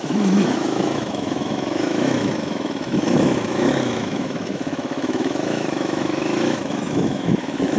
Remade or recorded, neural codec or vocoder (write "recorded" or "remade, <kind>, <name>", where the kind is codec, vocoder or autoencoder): remade, autoencoder, DAC-VAE